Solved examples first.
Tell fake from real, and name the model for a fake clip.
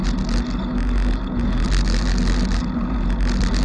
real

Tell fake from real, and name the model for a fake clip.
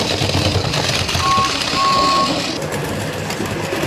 real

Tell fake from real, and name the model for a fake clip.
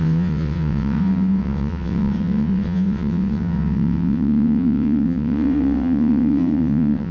fake, vocoder, WaveNeXt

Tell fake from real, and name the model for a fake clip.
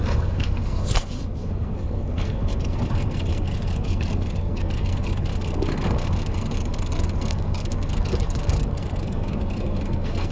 fake, codec, SNAC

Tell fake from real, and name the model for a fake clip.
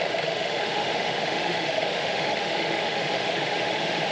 fake, autoencoder, DAC-VAE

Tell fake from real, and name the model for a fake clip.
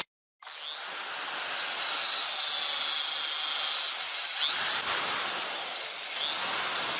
real